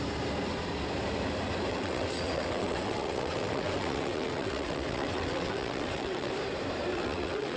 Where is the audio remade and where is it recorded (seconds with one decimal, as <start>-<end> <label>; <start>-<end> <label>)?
0.0-1.7 recorded; 1.7-6.3 remade; 6.3-6.9 recorded; 6.9-7.6 remade

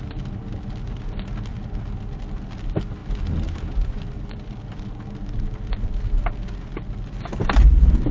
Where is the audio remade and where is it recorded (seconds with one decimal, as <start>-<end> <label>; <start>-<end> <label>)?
0.0-8.1 recorded

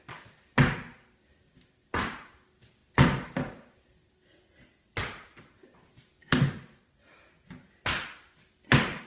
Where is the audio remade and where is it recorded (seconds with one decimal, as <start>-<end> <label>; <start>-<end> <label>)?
0.0-9.1 recorded

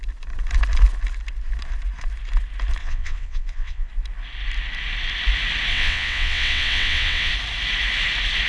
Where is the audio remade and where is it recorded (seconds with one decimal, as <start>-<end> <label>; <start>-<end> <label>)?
0.0-2.8 recorded; 2.8-3.9 remade; 3.9-5.7 recorded; 5.7-7.3 remade; 7.3-8.5 recorded

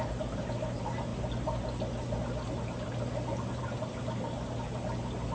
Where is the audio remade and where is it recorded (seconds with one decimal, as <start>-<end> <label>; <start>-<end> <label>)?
0.0-5.3 recorded